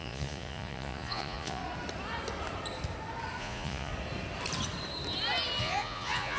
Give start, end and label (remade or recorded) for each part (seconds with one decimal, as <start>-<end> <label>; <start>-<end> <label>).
0.0-1.6 remade; 1.6-3.4 recorded; 3.4-3.9 remade; 3.9-5.6 recorded; 5.6-6.4 remade